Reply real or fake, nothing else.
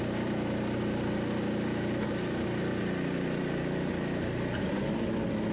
real